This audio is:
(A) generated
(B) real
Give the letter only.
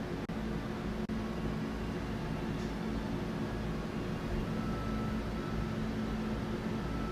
B